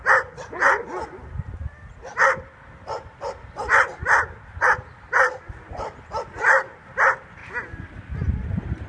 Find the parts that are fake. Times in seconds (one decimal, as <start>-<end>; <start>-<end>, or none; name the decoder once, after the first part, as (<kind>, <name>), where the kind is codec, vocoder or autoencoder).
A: none

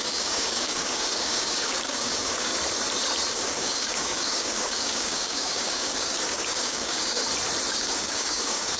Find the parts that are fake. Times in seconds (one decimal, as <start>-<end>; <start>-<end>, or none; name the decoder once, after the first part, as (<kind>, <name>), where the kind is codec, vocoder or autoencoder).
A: 0.0-2.5 (codec, DAC); 3.3-7.2; 7.7-8.8

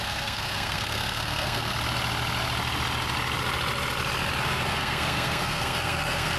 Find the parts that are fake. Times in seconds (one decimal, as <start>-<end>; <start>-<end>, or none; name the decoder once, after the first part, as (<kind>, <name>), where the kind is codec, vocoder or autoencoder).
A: 0.0-1.7 (codec, SNAC); 4.4-6.4

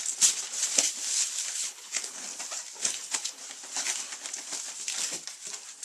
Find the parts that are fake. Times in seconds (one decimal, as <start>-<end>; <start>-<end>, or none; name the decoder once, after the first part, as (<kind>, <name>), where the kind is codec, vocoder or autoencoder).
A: 1.1-2.3 (codec, HILCodec); 2.8-3.4